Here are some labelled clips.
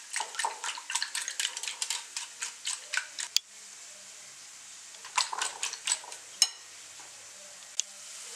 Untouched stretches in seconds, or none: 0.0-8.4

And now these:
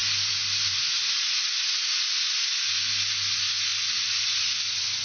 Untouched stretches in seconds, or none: 0.0-3.7; 4.6-5.0

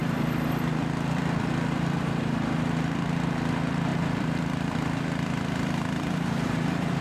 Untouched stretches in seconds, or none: 1.5-3.9

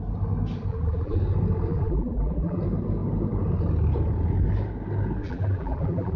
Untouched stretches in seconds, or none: 0.0-0.7; 1.2-1.7; 2.6-5.2

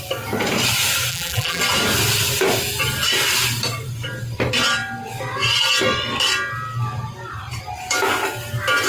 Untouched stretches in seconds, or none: 0.0-1.1; 1.6-8.9

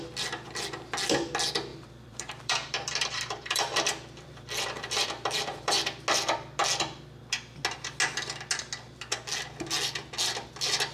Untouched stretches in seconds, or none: 0.0-1.7; 5.7-10.9

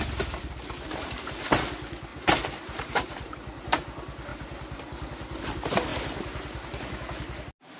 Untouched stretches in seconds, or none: 0.0-2.1; 3.3-4.3; 5.4-7.8

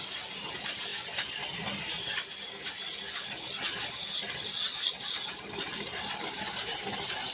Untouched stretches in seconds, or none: 0.0-7.3